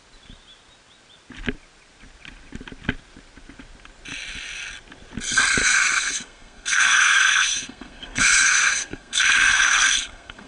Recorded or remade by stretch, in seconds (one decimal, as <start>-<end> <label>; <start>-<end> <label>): 0.0-5.6 recorded; 5.6-10.5 remade